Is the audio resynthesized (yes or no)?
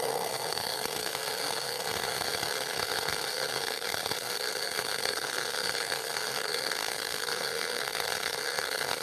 yes